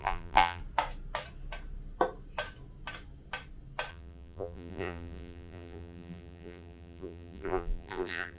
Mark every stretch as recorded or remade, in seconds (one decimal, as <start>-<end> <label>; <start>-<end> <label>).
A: 0.0-0.6 remade; 0.6-3.9 recorded; 3.9-8.4 remade